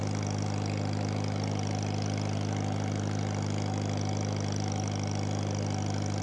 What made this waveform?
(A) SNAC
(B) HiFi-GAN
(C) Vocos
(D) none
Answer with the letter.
D